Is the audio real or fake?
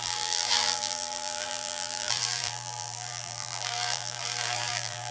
fake